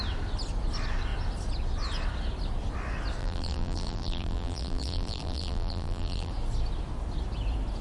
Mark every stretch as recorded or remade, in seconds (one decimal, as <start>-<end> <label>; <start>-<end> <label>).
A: 0.0-3.2 recorded; 3.2-6.3 remade; 6.3-7.8 recorded